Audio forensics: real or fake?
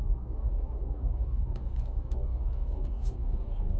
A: fake